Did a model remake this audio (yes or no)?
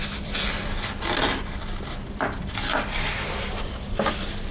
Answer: no